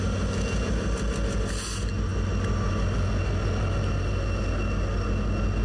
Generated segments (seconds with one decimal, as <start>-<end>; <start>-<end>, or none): none